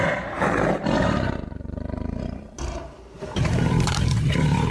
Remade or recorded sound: remade